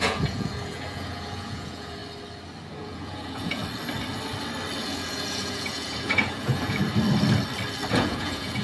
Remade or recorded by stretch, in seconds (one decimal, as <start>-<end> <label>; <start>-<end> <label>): 0.0-2.0 remade; 2.0-2.7 recorded; 2.7-3.6 remade; 3.6-4.8 recorded; 4.8-6.8 remade; 6.8-7.9 recorded; 7.9-8.6 remade